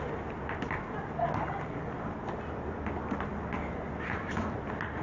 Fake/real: real